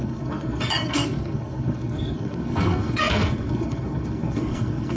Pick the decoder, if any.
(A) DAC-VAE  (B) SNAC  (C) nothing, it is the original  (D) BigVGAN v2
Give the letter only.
B